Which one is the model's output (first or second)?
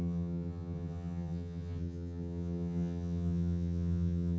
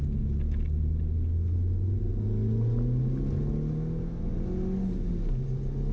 first